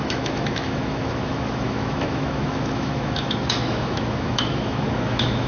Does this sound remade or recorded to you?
remade